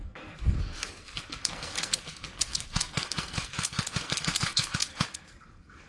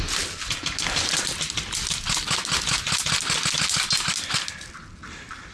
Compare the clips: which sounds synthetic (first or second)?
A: first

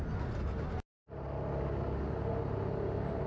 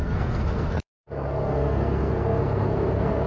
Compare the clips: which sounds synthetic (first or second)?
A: second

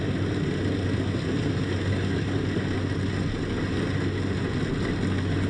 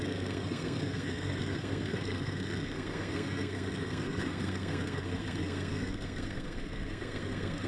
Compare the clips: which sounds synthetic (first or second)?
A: second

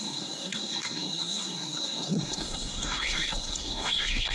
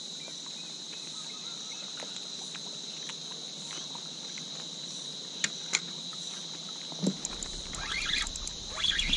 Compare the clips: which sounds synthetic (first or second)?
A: first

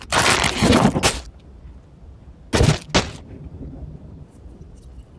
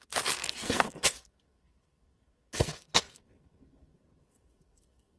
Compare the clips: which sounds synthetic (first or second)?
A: second